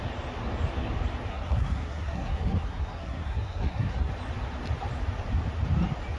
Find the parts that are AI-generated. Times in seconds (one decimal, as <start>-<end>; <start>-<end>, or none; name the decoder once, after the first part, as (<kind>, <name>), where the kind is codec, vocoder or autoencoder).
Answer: 1.3-4.1 (codec, SNAC)